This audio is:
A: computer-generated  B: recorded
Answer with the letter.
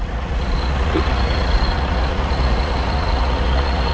A